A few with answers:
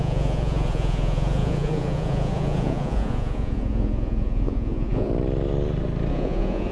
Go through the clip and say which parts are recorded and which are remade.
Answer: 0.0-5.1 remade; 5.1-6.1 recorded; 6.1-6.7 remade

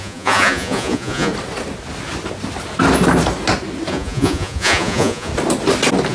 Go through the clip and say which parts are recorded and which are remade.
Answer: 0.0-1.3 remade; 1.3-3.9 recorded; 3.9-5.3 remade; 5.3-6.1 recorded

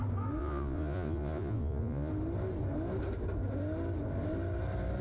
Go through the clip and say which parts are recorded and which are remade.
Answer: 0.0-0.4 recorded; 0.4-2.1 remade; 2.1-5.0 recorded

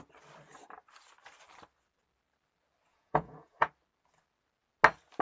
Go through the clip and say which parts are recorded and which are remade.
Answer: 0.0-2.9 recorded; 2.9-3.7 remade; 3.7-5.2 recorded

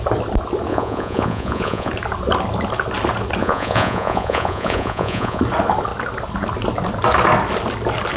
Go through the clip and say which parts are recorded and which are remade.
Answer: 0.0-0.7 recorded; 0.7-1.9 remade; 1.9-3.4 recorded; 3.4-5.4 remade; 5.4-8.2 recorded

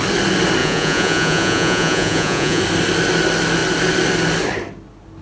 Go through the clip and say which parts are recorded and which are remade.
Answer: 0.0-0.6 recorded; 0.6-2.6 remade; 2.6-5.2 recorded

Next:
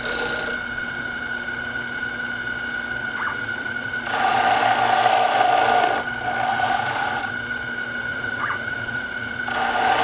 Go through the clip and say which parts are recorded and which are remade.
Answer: 0.0-3.0 recorded; 3.0-4.4 remade; 4.4-6.5 recorded; 6.5-7.3 remade; 7.3-8.1 recorded; 8.1-9.4 remade; 9.4-10.0 recorded

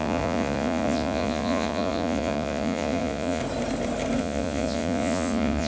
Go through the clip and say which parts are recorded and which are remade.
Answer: 0.0-3.4 remade; 3.4-4.2 recorded; 4.2-5.7 remade